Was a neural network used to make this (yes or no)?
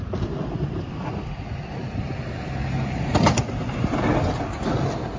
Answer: no